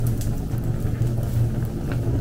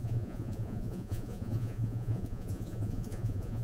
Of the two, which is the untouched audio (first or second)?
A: first